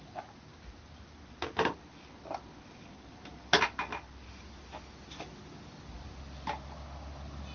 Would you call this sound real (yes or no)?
yes